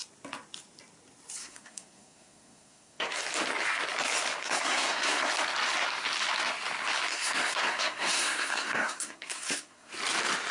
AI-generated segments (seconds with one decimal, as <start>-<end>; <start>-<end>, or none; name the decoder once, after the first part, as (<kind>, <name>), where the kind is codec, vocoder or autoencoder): 1.4-3.2 (codec, SNAC); 4.4-5.3; 7.1-9.9